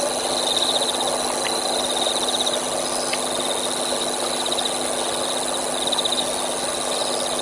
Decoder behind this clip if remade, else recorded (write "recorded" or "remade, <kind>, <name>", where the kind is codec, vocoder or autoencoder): recorded